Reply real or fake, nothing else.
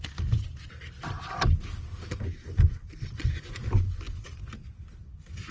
real